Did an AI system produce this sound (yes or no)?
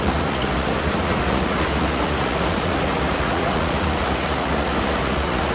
yes